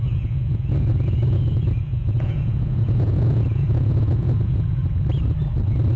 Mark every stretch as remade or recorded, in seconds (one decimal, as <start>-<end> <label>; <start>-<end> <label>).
0.0-4.8 remade; 4.8-6.0 recorded